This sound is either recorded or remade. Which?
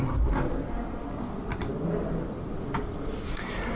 recorded